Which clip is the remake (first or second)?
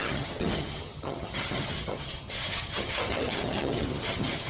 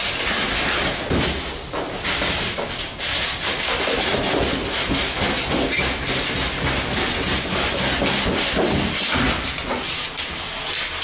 first